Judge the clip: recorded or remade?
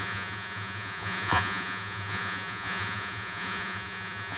remade